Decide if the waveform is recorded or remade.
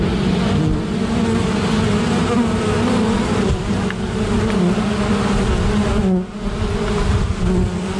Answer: recorded